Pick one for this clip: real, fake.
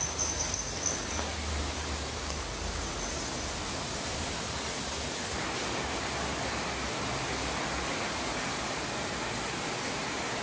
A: real